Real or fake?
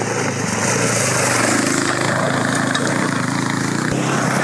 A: real